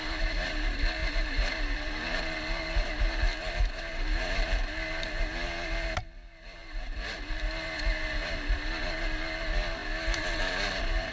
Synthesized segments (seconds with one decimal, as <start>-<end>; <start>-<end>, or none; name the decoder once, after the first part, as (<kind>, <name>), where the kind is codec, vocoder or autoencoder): 0.0-9.8 (vocoder, BigVGAN v2); 10.4-11.1